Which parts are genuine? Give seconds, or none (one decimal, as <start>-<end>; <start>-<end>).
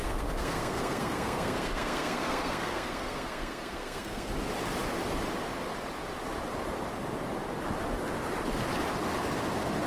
4.3-9.9